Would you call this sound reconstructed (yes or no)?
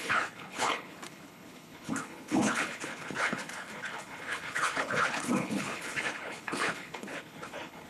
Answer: yes